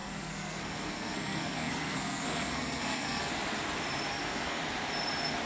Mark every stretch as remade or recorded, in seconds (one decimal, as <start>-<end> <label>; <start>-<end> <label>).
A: 0.0-3.3 remade; 3.3-4.1 recorded; 4.1-4.6 remade; 4.6-5.5 recorded